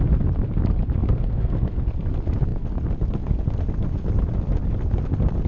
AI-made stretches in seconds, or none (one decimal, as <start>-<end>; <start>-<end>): 1.0-1.8